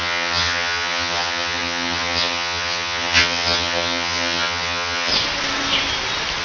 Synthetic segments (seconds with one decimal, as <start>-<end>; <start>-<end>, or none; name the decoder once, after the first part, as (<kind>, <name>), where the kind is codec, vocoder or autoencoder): 0.0-5.1 (vocoder, HiFi-GAN)